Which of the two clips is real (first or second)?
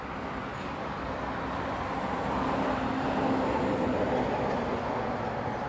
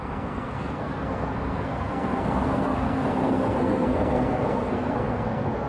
first